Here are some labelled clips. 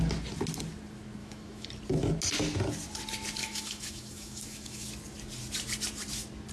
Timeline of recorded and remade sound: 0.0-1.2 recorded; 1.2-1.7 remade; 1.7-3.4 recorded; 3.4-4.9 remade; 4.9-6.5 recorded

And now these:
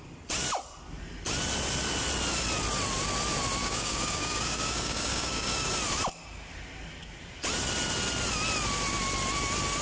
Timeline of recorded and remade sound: 0.0-3.6 recorded; 3.6-5.7 remade; 5.7-9.8 recorded

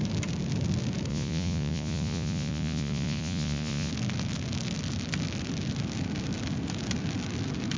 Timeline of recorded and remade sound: 0.0-1.1 recorded; 1.1-3.9 remade; 3.9-7.8 recorded

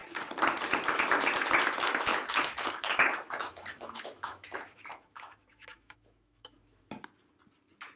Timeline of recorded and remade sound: 0.0-2.1 recorded; 2.1-6.9 remade; 6.9-8.0 recorded

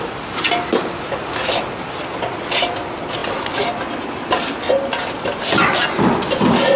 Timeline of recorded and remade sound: 0.0-6.8 recorded

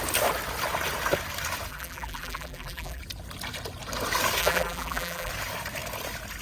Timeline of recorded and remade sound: 0.0-1.7 recorded; 1.7-3.0 remade; 3.0-4.4 recorded; 4.4-5.3 remade; 5.3-6.4 recorded